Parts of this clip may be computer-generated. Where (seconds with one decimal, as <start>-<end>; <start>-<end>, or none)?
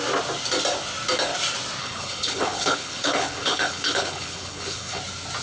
1.8-5.0